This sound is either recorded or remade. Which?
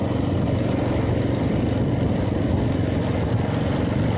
recorded